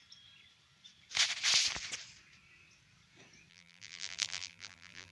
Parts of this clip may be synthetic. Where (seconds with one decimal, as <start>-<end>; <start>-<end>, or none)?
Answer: 3.5-5.1